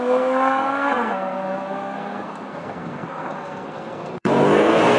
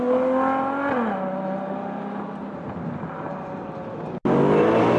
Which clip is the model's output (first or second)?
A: first